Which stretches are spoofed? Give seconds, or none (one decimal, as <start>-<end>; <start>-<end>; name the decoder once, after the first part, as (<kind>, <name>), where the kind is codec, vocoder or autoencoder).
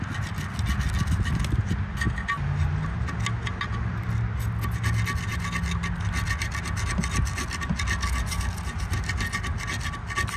none